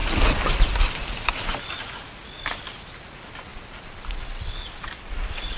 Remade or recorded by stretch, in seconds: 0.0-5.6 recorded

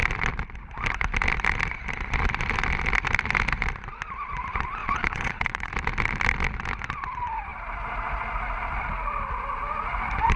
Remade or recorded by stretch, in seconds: 0.0-4.8 recorded; 4.8-5.7 remade; 5.7-10.4 recorded

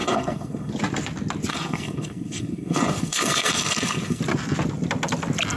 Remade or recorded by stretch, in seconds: 0.0-0.7 remade; 0.7-1.5 recorded; 1.5-4.2 remade; 4.2-5.6 recorded

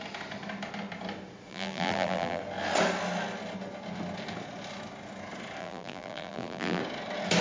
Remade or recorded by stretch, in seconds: 0.0-1.5 recorded; 1.5-2.4 remade; 2.4-5.6 recorded; 5.6-6.8 remade; 6.8-7.4 recorded

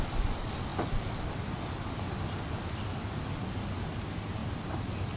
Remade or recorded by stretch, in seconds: 0.0-5.2 recorded

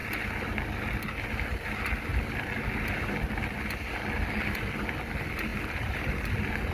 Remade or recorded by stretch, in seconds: 0.0-5.5 recorded; 5.5-6.3 remade; 6.3-6.7 recorded

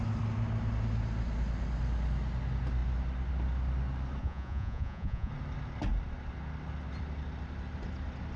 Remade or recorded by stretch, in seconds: 0.0-4.2 recorded; 4.2-5.3 remade; 5.3-8.4 recorded

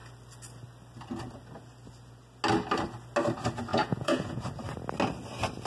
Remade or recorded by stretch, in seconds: 0.0-3.7 recorded; 3.7-4.5 remade; 4.5-5.7 recorded